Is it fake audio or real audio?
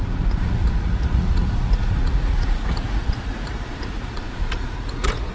fake